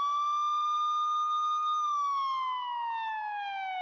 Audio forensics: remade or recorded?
recorded